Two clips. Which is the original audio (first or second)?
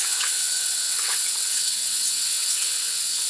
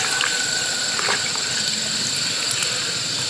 second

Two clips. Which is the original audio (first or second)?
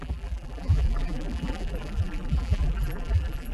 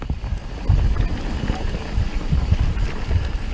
second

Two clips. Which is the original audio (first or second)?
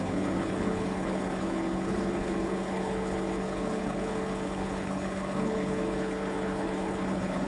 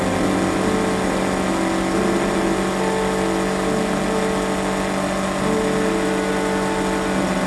second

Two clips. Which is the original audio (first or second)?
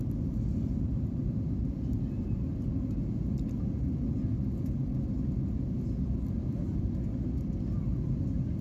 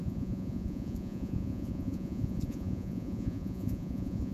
first